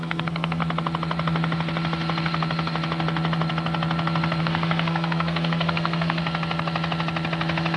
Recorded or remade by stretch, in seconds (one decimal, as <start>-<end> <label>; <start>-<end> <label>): 0.0-0.6 remade; 0.6-4.4 recorded; 4.4-6.2 remade; 6.2-7.8 recorded